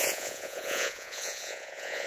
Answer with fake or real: fake